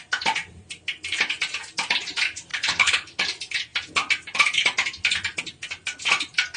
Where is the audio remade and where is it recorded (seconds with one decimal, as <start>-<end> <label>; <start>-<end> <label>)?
0.0-2.5 recorded; 2.5-3.2 remade; 3.2-6.6 recorded